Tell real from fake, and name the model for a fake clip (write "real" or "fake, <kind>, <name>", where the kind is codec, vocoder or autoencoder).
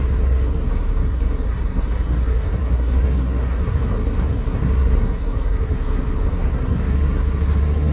fake, codec, SNAC